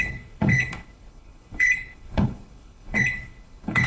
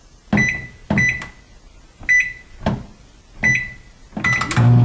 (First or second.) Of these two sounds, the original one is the second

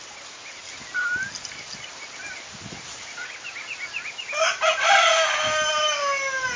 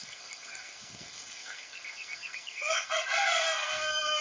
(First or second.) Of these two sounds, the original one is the first